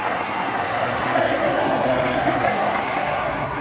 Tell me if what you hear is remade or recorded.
remade